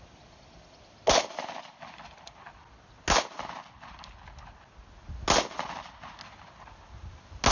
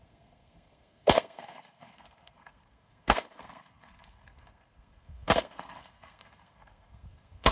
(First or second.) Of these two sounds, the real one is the first